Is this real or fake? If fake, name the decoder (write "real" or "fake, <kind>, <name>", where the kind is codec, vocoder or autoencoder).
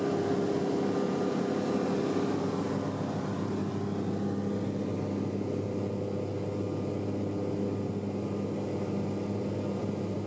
real